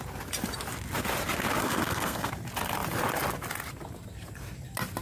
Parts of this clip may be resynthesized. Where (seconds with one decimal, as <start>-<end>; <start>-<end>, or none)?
1.6-2.3